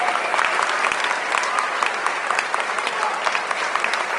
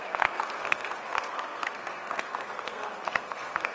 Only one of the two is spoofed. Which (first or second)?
second